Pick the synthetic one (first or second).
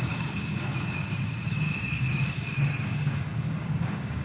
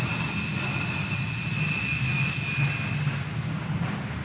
first